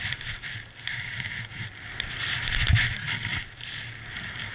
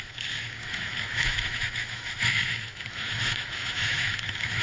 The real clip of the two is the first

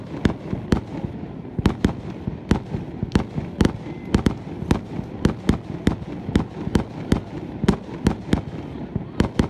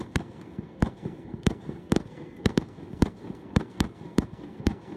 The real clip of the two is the first